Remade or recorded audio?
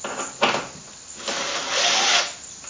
recorded